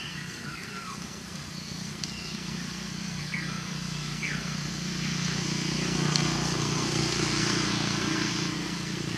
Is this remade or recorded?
remade